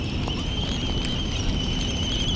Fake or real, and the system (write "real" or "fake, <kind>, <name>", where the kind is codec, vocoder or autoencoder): fake, vocoder, BigVGAN v2